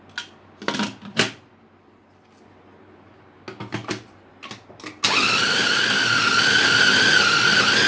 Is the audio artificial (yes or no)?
no